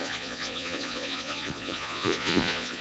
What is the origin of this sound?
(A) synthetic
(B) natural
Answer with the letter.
A